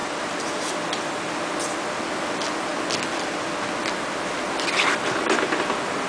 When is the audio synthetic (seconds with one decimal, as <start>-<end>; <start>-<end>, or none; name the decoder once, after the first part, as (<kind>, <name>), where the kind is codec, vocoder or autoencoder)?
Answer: none